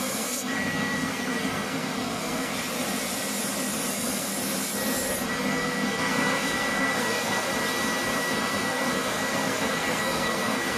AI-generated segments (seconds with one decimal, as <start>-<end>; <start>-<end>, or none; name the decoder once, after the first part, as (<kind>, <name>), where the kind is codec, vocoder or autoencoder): 0.0-2.5 (codec, SNAC); 3.9-4.3; 5.5-7.5; 8.2-10.8